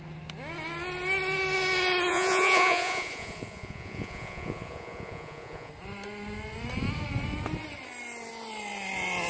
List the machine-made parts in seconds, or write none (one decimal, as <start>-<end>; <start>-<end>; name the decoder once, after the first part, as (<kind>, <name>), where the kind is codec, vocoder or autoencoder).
2.1-5.7 (vocoder, Vocos)